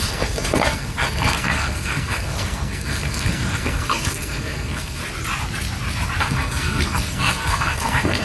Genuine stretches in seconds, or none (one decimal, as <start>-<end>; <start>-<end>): 5.0-6.2

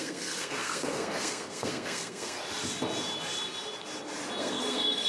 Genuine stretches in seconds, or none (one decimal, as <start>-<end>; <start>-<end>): 2.4-4.4

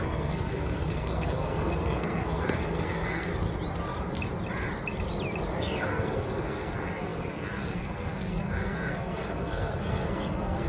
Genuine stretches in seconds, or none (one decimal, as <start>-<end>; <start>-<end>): 3.3-5.6

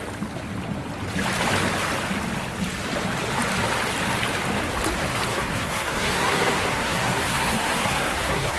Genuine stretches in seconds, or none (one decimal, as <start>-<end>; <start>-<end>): 0.0-5.3

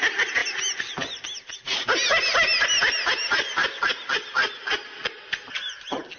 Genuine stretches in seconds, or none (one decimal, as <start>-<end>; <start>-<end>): 0.0-6.2